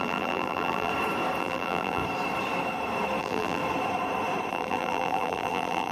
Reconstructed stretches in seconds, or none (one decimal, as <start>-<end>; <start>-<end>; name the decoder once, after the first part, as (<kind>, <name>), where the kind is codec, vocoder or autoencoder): 0.0-0.9 (vocoder, BigVGAN v2); 1.4-2.0; 3.2-3.6; 4.5-5.9